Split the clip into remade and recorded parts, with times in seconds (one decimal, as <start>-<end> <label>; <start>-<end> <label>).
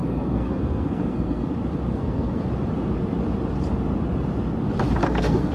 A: 0.0-1.5 remade; 1.5-1.9 recorded; 1.9-2.4 remade; 2.4-5.0 recorded; 5.0-5.5 remade